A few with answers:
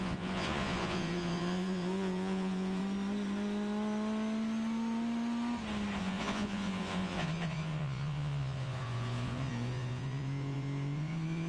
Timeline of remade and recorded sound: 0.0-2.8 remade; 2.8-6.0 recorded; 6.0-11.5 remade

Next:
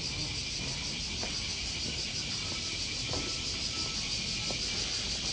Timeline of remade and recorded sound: 0.0-5.3 recorded